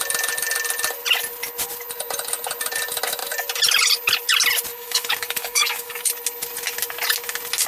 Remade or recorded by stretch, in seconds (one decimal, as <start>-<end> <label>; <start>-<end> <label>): 0.0-4.7 recorded; 4.7-6.1 remade; 6.1-7.7 recorded